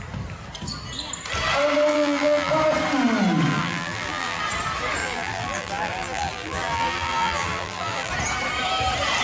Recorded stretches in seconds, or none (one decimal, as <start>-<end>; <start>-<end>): 0.0-1.9; 2.5-3.5; 4.4-5.0; 8.1-9.2